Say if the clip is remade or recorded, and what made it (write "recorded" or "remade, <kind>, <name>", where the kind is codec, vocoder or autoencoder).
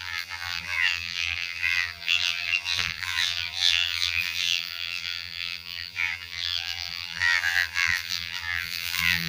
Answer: remade, vocoder, BigVGAN v2